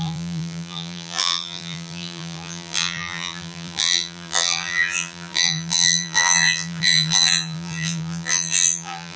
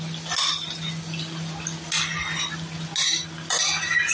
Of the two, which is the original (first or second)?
second